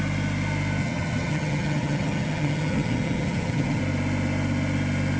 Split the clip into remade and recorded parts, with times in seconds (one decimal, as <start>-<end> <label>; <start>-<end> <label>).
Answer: 0.0-0.8 recorded; 0.8-3.8 remade; 3.8-5.2 recorded